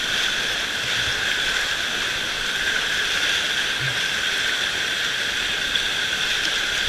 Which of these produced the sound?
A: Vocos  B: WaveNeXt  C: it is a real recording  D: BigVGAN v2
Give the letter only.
C